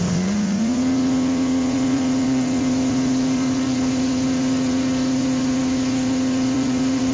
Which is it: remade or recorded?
remade